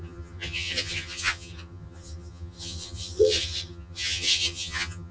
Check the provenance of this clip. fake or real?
fake